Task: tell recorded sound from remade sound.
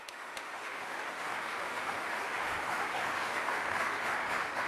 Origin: remade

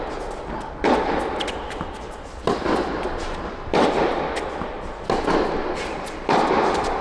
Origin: recorded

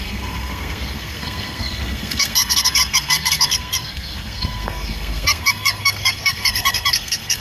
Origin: remade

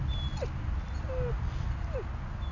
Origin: recorded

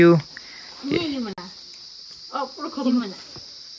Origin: recorded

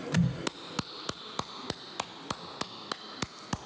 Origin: recorded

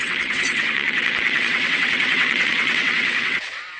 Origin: remade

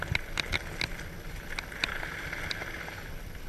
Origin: recorded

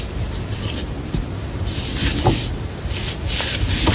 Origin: recorded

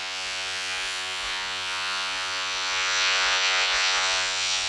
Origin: remade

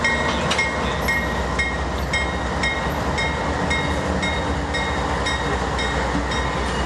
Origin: recorded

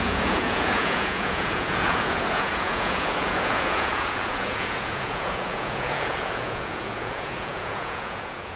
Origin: remade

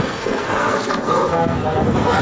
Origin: remade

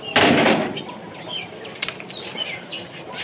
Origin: recorded